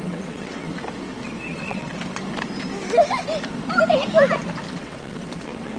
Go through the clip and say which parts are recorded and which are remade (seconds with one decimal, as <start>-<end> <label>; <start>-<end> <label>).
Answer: 0.0-0.7 remade; 0.7-1.5 recorded; 1.5-1.9 remade; 1.9-4.8 recorded; 4.8-5.8 remade

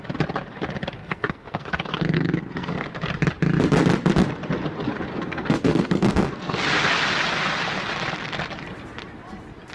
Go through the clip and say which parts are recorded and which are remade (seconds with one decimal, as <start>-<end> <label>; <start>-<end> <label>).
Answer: 0.0-1.0 recorded; 1.0-2.9 remade; 2.9-5.1 recorded; 5.1-6.6 remade; 6.6-9.7 recorded

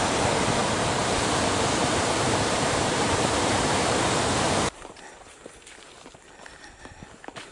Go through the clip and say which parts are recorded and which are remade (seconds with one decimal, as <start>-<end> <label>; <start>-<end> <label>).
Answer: 0.0-0.6 recorded; 0.6-1.3 remade; 1.3-1.8 recorded; 1.8-5.5 remade; 5.5-7.5 recorded

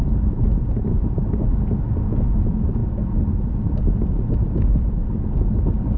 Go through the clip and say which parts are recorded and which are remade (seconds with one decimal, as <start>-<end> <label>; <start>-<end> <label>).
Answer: 0.0-1.4 remade; 1.4-6.0 recorded

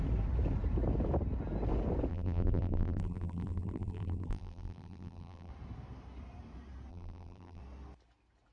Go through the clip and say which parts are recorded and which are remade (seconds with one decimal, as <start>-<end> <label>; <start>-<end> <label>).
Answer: 0.0-2.1 recorded; 2.1-5.5 remade; 5.5-6.9 recorded; 6.9-7.6 remade; 7.6-8.5 recorded

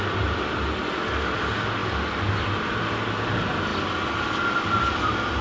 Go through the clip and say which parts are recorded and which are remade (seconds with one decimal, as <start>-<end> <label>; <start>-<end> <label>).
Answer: 0.0-5.4 recorded

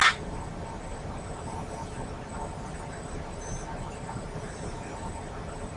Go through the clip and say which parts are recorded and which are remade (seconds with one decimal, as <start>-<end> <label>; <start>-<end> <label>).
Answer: 0.0-5.8 recorded